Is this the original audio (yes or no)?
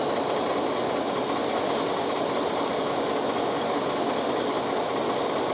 yes